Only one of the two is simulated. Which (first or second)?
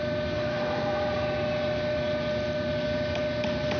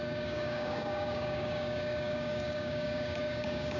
second